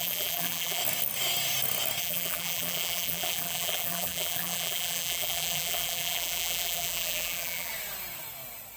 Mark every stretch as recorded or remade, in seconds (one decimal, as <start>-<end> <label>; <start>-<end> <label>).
0.0-0.8 remade; 0.8-2.0 recorded; 2.0-7.7 remade; 7.7-8.8 recorded